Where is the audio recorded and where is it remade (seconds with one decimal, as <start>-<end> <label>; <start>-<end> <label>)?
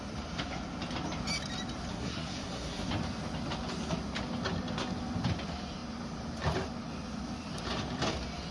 0.0-1.9 recorded; 1.9-2.9 remade; 2.9-8.5 recorded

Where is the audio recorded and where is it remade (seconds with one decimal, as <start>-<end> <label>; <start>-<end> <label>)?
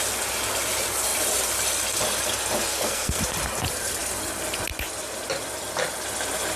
0.0-2.7 recorded; 2.7-3.2 remade; 3.2-6.6 recorded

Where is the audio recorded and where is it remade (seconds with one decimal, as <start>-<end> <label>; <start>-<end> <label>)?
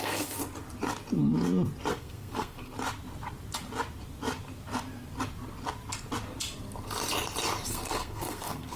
0.0-0.4 remade; 0.4-1.9 recorded; 1.9-2.7 remade; 2.7-7.7 recorded; 7.7-8.8 remade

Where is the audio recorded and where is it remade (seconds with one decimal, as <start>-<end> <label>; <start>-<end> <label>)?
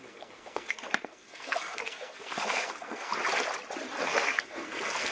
0.0-3.1 remade; 3.1-4.0 recorded; 4.0-5.1 remade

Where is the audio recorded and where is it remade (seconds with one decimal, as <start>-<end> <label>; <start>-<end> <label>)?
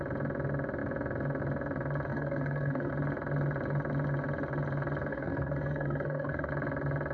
0.0-2.1 recorded; 2.1-2.9 remade; 2.9-5.1 recorded; 5.1-6.5 remade; 6.5-7.1 recorded